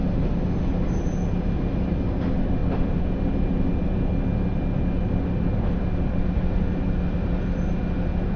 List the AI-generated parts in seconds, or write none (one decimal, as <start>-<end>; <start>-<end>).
none